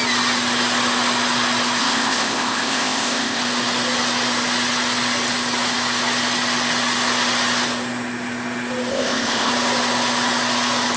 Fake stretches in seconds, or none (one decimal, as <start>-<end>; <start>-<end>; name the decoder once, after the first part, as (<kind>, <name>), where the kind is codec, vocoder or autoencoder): 1.8-3.4 (codec, ZipCodec); 8.9-9.5